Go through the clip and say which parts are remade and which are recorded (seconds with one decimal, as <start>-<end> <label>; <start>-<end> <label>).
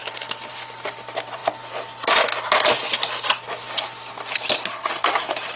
0.0-5.6 recorded